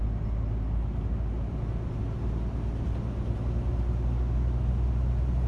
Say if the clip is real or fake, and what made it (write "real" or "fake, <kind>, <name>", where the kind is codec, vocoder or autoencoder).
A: real